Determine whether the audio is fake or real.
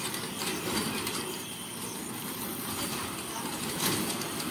real